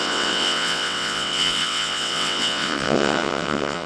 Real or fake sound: fake